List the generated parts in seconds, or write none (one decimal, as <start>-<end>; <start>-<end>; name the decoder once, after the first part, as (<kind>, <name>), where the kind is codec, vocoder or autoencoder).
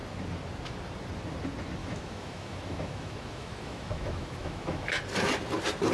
1.8-5.0 (autoencoder, DAC-VAE)